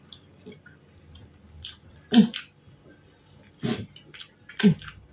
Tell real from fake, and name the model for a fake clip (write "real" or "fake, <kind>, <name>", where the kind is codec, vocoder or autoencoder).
real